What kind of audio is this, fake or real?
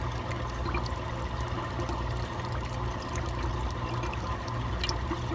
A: real